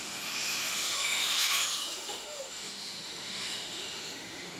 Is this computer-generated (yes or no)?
yes